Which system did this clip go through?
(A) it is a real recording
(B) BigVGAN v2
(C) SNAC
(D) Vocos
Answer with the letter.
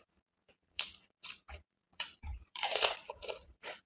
D